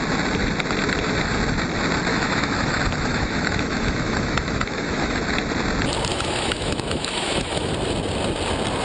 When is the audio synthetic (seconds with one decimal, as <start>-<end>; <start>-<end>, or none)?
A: 2.1-5.2; 6.1-7.7